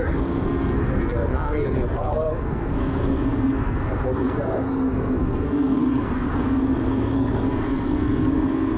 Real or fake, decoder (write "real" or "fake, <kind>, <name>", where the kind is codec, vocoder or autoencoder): fake, codec, SNAC